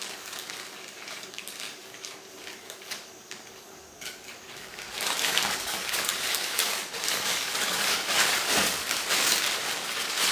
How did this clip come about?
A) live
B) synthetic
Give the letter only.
B